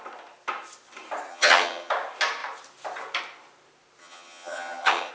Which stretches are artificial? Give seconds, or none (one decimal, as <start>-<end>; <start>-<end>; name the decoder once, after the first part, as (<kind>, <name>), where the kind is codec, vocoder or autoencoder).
1.3-1.9 (vocoder, HiFi-GAN); 4.0-5.1